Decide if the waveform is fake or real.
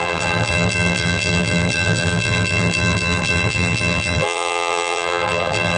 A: fake